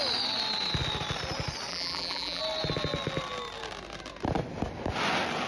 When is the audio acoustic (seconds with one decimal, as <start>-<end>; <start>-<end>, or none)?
0.0-1.7; 2.4-5.5